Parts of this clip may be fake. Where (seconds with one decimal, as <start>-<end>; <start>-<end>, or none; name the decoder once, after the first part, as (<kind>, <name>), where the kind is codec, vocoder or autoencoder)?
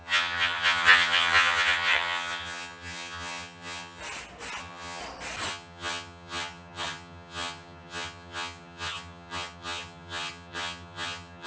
0.0-4.0 (vocoder, HiFi-GAN); 4.6-5.0; 5.5-11.5